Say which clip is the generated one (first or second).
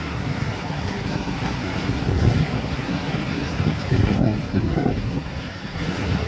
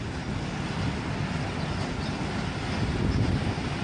first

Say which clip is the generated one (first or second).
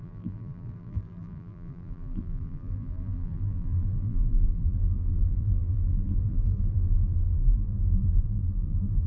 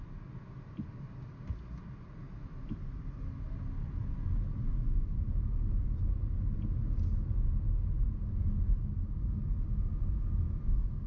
first